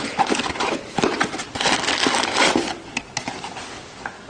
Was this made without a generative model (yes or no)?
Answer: yes